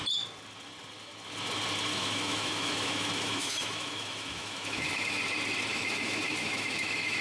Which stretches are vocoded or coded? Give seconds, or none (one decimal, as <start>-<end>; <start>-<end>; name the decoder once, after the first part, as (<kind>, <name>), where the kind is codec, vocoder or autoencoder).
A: 1.9-5.2 (autoencoder, DAC-VAE); 5.7-7.2

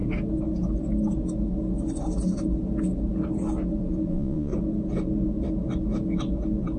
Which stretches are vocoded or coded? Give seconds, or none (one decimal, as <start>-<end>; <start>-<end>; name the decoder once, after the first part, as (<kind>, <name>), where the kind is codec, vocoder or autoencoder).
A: 4.1-4.5 (vocoder, Vocos)